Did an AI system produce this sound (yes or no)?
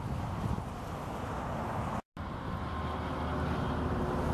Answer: no